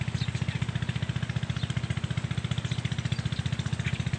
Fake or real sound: real